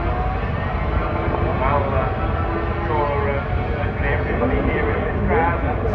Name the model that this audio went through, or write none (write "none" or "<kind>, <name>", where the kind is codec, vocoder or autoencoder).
none